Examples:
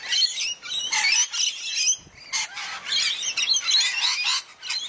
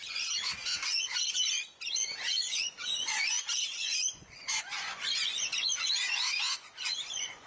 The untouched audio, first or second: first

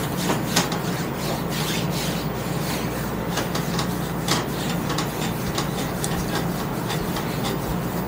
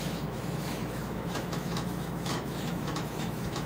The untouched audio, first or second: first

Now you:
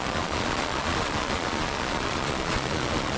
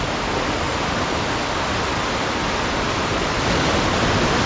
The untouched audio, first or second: second